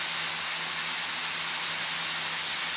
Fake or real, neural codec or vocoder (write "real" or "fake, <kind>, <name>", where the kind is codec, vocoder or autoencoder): real